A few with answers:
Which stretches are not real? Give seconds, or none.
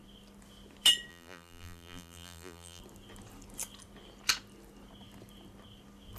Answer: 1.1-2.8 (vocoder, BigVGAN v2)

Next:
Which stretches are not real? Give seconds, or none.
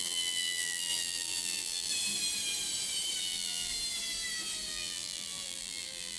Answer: 0.0-1.9 (vocoder, BigVGAN v2); 3.2-3.7; 4.7-6.2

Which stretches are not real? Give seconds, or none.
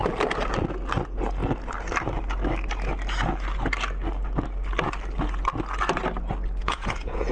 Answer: 6.6-7.3 (vocoder, Vocos)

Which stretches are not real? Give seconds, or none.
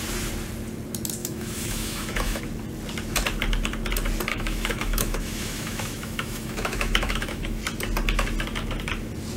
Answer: 1.2-2.4 (autoencoder, DAC-VAE); 4.3-7.6